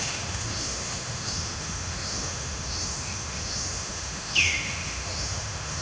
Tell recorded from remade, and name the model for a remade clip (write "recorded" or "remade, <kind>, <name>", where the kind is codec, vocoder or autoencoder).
remade, autoencoder, DAC-VAE